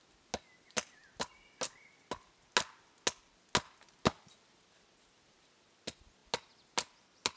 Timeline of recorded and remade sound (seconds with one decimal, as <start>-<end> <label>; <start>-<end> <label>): 0.0-7.4 recorded